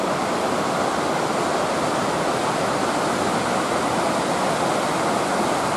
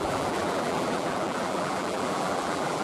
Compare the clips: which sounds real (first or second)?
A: first